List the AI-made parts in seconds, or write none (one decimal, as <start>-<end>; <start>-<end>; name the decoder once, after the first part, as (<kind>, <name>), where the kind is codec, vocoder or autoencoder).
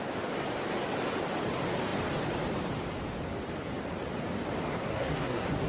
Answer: 4.7-5.7 (codec, SNAC)